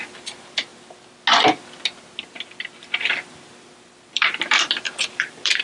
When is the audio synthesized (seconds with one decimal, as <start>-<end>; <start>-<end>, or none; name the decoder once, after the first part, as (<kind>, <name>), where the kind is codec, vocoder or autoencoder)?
0.0-0.7 (vocoder, BigVGAN v2); 4.1-5.6